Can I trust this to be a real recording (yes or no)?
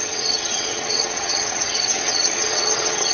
no